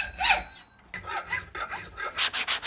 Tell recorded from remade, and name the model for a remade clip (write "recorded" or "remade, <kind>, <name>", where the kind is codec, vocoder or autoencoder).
recorded